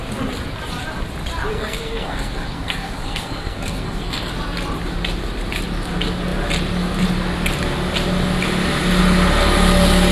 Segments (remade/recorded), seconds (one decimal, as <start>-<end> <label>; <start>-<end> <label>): 0.0-1.5 recorded; 1.5-4.3 remade; 4.3-10.1 recorded